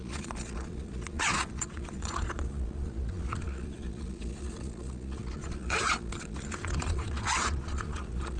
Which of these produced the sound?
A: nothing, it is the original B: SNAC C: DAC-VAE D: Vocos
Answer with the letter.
D